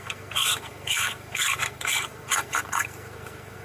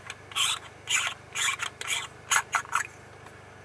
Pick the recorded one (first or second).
second